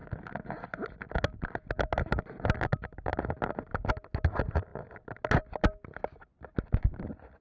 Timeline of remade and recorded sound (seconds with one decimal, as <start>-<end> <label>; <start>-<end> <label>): 0.0-7.4 recorded